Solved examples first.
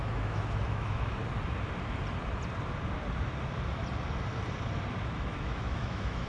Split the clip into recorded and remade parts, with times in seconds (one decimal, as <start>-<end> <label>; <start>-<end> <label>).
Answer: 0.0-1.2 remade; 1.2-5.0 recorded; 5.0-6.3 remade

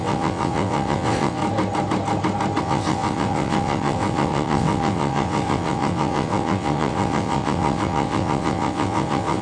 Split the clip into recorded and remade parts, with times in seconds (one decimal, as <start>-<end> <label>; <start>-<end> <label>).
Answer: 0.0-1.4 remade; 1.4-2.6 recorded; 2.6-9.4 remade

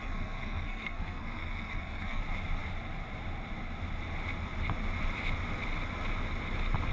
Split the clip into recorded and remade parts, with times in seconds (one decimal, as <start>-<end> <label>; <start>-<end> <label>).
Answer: 0.0-2.2 remade; 2.2-6.9 recorded

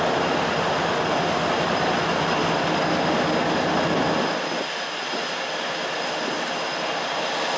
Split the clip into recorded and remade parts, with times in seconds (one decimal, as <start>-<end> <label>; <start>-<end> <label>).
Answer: 0.0-7.6 recorded